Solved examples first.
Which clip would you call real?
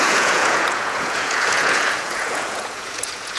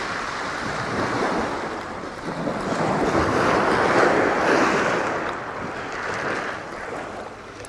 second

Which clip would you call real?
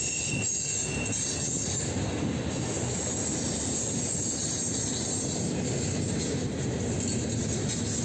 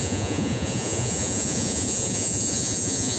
first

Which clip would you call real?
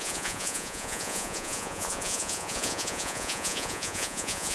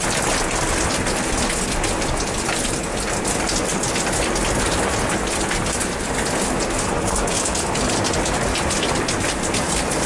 second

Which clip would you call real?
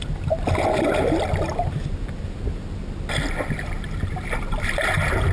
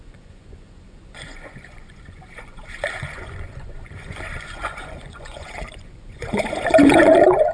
first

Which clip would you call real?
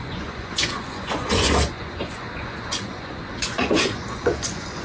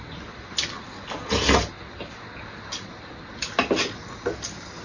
second